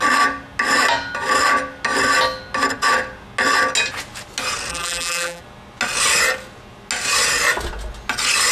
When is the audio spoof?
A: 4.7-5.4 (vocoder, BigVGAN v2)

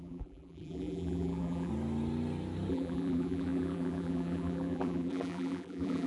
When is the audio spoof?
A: 0.0-1.7 (vocoder, BigVGAN v2); 2.7-6.1

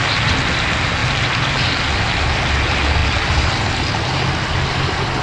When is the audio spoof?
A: none